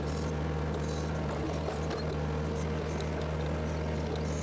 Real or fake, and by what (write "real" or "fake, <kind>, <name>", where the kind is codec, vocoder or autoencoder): real